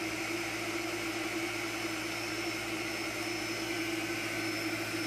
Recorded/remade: recorded